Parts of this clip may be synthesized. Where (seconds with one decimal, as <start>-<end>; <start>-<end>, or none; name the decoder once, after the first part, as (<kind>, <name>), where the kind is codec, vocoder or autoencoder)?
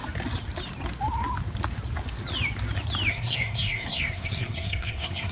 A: 3.1-5.3 (codec, SNAC)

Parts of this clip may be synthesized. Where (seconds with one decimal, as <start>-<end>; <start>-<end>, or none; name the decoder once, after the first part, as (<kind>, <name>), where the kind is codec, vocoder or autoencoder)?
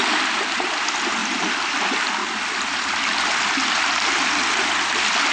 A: 1.2-1.8 (vocoder, BigVGAN v2)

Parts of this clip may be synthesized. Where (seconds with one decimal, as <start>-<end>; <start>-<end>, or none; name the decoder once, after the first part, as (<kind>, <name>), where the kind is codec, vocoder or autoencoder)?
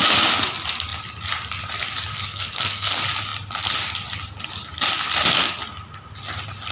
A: 2.1-2.9 (codec, SNAC)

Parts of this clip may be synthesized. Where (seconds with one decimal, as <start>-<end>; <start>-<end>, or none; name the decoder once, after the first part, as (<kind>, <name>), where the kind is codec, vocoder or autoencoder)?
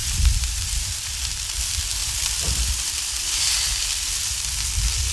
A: 0.0-1.6 (vocoder, BigVGAN v2); 2.0-4.4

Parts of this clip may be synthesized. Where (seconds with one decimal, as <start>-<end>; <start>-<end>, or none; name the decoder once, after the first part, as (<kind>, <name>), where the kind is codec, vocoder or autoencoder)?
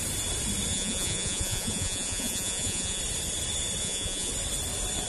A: 0.7-3.0 (vocoder, Vocos); 3.8-4.3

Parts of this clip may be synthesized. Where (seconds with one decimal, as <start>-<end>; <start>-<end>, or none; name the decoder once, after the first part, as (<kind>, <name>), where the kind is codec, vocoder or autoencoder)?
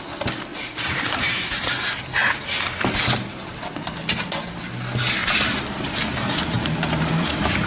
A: 0.5-1.7 (vocoder, BigVGAN v2); 5.2-7.7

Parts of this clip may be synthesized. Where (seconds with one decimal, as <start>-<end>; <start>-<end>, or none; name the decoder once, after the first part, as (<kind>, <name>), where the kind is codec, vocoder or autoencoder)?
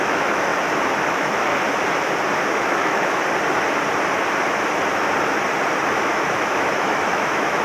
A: 0.0-0.5 (autoencoder, DAC-VAE); 1.1-1.5; 2.5-3.2; 5.9-7.6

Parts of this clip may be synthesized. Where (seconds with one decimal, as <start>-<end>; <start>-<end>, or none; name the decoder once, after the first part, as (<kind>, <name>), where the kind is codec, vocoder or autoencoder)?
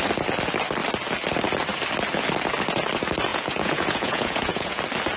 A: 3.3-4.8 (vocoder, Vocos)